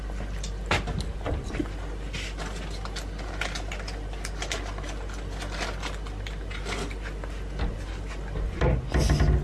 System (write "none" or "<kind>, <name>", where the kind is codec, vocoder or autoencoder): none